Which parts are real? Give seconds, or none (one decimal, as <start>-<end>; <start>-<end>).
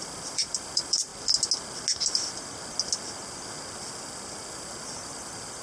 1.1-3.7